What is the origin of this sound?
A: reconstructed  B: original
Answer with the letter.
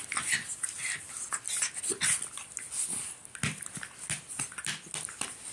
B